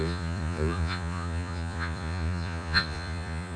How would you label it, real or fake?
fake